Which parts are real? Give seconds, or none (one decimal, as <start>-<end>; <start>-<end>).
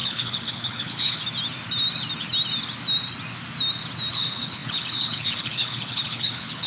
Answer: 1.2-4.1